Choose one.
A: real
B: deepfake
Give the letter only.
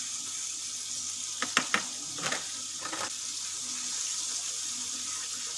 A